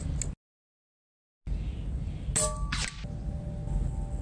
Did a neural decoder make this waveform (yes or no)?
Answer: no